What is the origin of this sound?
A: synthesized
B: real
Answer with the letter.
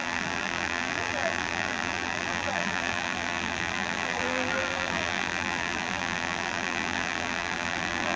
A